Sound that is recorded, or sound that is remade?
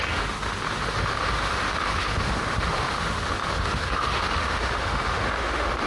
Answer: remade